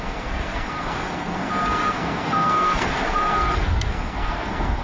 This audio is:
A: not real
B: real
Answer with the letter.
A